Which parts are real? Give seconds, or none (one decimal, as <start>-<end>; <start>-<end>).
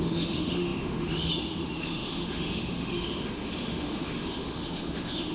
none